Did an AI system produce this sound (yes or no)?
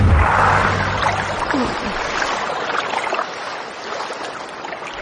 no